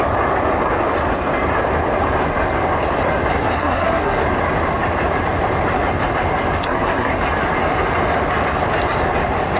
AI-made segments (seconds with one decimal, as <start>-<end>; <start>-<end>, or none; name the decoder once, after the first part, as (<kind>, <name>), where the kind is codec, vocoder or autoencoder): 3.3-4.2 (codec, SNAC); 6.6-7.1